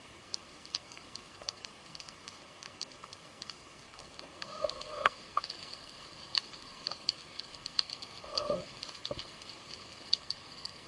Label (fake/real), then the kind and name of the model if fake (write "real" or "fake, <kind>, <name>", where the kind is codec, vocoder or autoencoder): fake, codec, SNAC